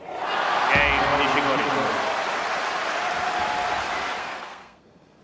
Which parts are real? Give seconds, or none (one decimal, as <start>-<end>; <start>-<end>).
0.0-4.2